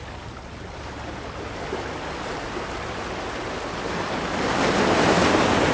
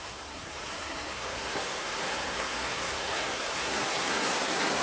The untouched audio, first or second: first